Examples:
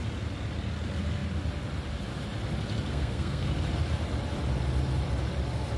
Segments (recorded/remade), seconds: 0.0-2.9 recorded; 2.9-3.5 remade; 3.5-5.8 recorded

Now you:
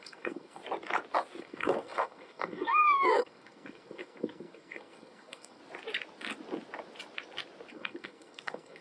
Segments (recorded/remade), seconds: 0.0-0.6 remade; 0.6-1.4 recorded; 1.4-5.6 remade; 5.6-7.7 recorded; 7.7-8.8 remade

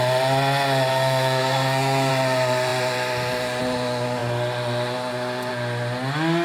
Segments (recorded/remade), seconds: 0.0-0.9 recorded; 0.9-2.1 remade; 2.1-6.4 recorded